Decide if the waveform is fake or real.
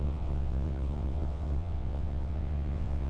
fake